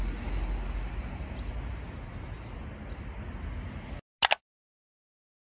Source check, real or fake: real